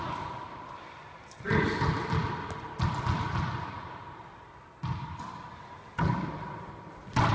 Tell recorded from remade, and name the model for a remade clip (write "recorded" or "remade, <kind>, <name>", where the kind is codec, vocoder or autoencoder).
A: recorded